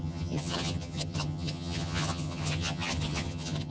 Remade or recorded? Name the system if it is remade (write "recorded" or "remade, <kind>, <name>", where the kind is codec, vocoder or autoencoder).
remade, vocoder, HiFi-GAN